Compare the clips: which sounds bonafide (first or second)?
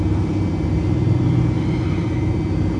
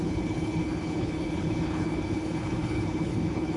first